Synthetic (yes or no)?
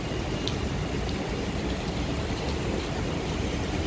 no